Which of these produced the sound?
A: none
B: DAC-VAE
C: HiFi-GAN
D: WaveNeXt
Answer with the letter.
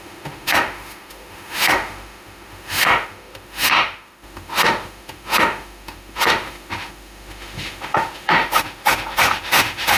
B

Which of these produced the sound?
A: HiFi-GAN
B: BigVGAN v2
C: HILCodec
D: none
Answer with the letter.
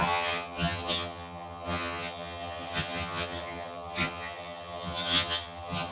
A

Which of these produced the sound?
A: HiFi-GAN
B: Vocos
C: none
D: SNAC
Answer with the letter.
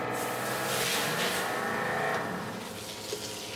C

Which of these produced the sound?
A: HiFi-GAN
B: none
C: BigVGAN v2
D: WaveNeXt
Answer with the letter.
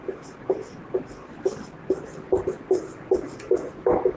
C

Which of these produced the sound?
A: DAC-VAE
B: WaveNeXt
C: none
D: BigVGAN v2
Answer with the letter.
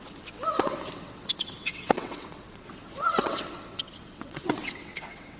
B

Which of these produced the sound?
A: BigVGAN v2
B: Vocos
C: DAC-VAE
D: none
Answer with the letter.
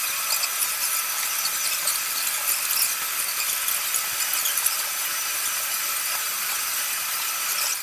D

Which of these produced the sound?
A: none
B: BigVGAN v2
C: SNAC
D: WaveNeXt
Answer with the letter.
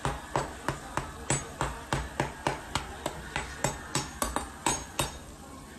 A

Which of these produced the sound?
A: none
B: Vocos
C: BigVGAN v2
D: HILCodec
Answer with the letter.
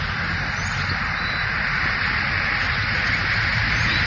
A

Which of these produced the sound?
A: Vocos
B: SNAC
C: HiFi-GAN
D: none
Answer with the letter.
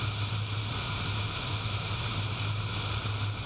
D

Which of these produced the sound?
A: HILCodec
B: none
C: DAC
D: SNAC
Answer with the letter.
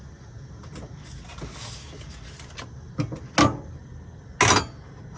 B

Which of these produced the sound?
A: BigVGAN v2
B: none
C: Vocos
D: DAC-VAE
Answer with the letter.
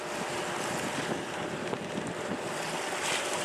B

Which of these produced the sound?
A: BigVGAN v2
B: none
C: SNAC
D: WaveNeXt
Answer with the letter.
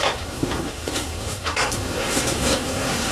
C